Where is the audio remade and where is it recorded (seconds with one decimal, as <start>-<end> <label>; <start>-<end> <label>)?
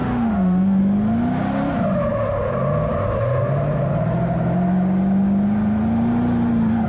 0.0-0.8 remade; 0.8-6.9 recorded